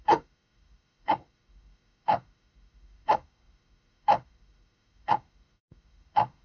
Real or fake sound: fake